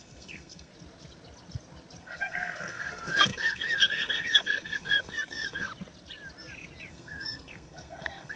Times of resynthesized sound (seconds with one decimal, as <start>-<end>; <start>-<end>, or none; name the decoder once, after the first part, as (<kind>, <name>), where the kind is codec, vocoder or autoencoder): 0.0-0.7 (codec, SNAC); 2.0-5.7; 6.9-8.4